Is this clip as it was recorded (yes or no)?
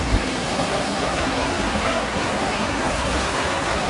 no